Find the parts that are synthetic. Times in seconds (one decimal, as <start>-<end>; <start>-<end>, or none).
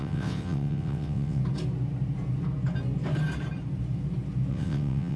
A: 0.0-1.4; 4.5-5.2